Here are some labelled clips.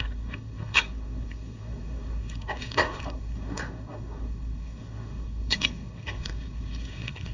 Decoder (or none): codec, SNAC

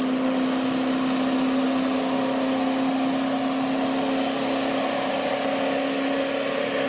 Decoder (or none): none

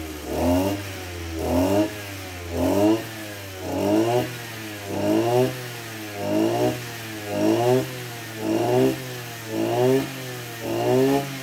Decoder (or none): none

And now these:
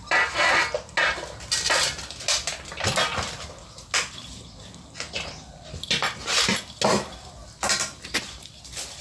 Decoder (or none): none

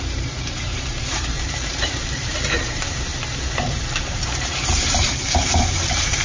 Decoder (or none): vocoder, BigVGAN v2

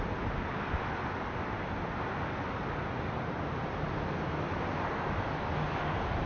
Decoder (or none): none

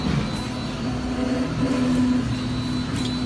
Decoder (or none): none